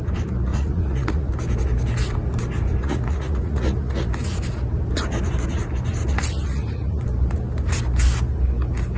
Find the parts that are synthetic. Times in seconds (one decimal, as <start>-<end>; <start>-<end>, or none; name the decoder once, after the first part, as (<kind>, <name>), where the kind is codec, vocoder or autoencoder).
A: 0.5-1.3 (vocoder, Vocos); 2.8-4.1; 6.0-7.0